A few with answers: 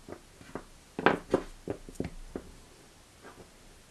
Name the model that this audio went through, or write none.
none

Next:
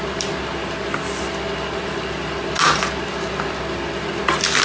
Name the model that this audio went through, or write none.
none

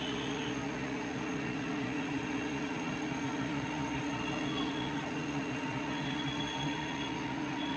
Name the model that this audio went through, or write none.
vocoder, Vocos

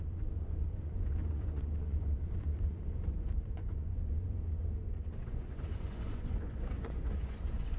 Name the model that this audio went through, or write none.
vocoder, Vocos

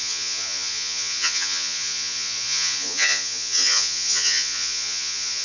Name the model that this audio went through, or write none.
vocoder, Vocos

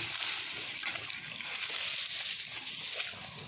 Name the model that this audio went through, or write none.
none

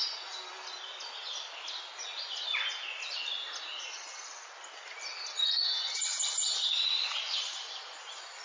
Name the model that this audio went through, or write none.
none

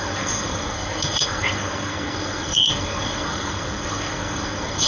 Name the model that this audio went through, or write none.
codec, SNAC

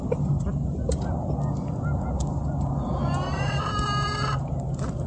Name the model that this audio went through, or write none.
none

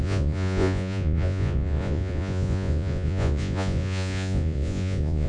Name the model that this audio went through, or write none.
vocoder, Vocos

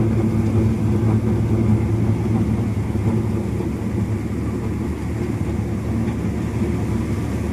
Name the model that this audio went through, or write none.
none